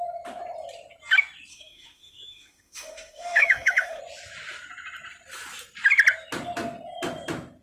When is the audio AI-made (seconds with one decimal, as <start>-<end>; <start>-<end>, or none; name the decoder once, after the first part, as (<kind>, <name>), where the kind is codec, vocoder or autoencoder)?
1.5-4.0 (autoencoder, DAC-VAE)